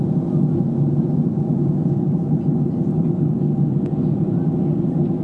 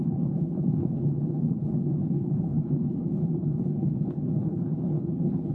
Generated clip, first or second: second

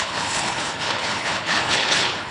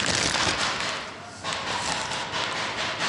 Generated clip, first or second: first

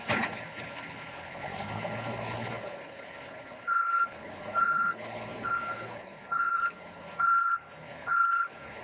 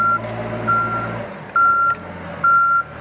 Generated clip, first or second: first